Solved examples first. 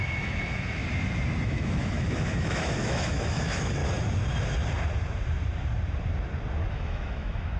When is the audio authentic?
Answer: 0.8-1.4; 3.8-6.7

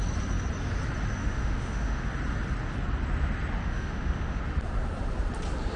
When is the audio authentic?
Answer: 0.0-1.2; 2.1-3.6; 4.4-5.8

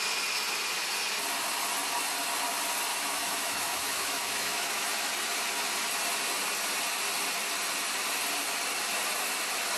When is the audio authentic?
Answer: 0.0-2.9; 5.1-9.8

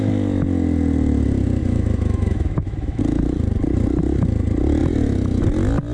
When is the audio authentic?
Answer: 0.0-1.6; 3.0-5.9